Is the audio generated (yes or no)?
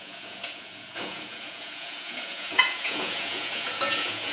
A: yes